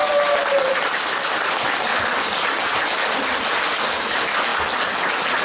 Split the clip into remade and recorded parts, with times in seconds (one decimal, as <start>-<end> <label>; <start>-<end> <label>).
0.0-3.2 remade; 3.2-5.4 recorded